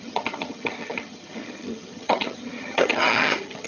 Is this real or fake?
fake